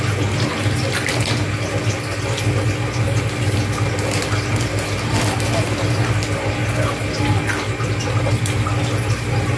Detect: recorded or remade recorded